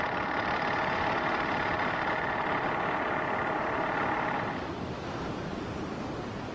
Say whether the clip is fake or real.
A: fake